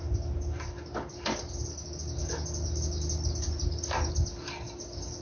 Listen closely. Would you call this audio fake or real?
real